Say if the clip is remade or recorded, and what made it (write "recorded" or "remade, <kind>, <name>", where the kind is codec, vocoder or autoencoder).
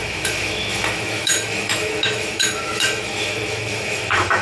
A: remade, autoencoder, DAC-VAE